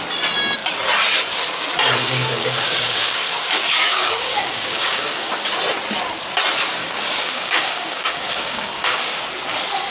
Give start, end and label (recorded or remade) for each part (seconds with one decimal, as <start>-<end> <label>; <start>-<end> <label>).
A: 0.0-2.0 recorded; 2.0-5.3 remade; 5.3-6.8 recorded; 6.8-9.3 remade; 9.3-9.9 recorded